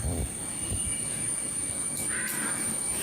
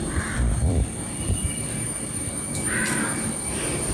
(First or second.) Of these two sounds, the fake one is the second